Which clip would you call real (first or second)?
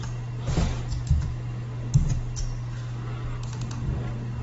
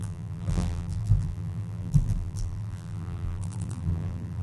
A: first